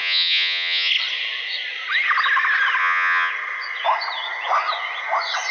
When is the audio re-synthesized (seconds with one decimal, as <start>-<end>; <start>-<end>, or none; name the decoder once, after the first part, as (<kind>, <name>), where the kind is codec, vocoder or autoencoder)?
0.0-0.9 (vocoder, Vocos); 2.8-3.3